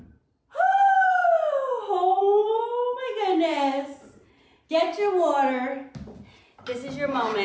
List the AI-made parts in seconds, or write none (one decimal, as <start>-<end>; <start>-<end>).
none